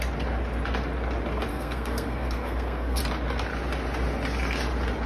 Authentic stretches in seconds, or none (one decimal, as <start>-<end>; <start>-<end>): 0.0-1.5; 3.0-5.1